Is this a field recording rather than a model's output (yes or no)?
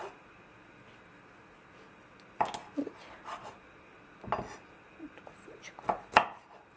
yes